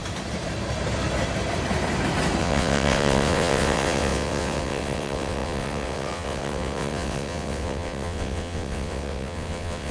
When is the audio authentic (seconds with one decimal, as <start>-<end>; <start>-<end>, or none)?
0.0-2.4